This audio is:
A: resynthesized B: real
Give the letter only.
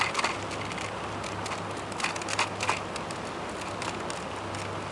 B